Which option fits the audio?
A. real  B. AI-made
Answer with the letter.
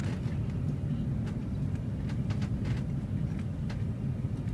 A